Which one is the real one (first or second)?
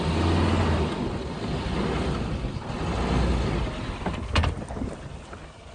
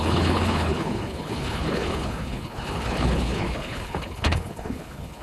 first